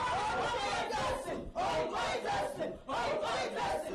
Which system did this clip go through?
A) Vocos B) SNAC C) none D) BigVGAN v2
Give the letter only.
C